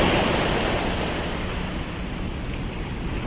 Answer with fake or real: real